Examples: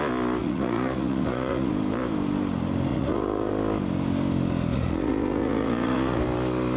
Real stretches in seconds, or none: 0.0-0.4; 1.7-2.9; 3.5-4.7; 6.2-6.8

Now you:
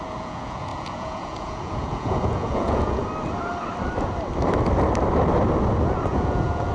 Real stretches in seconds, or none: 3.0-6.1

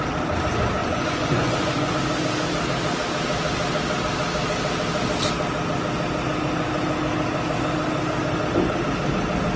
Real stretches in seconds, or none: 0.0-0.8; 1.9-9.6

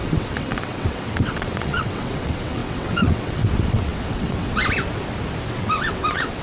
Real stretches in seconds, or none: 4.6-5.5